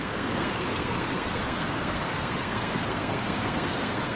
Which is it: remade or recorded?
remade